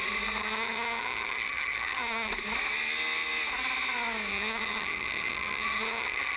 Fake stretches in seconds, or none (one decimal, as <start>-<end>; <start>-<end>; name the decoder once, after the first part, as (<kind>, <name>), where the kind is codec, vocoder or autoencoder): 0.4-2.3 (vocoder, HiFi-GAN); 4.3-6.4